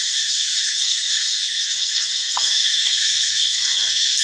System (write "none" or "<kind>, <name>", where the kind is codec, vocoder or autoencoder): codec, SNAC